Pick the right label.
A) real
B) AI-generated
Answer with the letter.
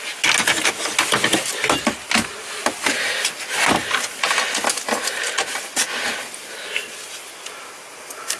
A